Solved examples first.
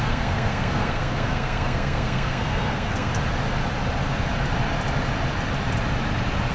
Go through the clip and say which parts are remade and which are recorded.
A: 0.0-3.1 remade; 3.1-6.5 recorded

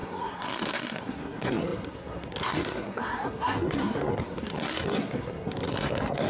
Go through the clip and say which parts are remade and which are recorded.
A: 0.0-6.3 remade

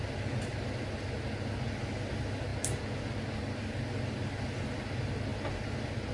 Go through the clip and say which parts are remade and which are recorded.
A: 0.0-6.1 recorded

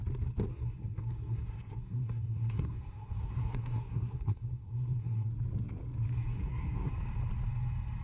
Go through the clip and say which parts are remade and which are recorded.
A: 0.0-0.5 recorded; 0.5-5.3 remade; 5.3-6.3 recorded; 6.3-6.9 remade; 6.9-8.0 recorded